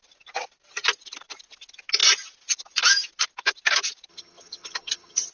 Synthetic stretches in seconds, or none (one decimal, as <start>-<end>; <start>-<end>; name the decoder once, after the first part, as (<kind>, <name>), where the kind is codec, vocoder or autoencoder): 4.1-5.3 (vocoder, HiFi-GAN)